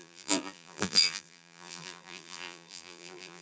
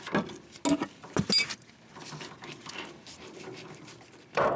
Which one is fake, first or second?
first